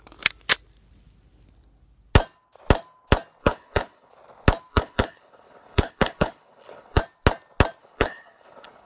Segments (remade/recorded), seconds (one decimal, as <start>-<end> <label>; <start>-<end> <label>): 0.0-3.4 recorded; 3.4-4.1 remade; 4.1-4.7 recorded; 4.7-7.0 remade; 7.0-7.8 recorded; 7.8-8.9 remade